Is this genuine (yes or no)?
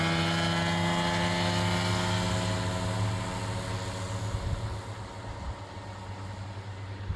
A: yes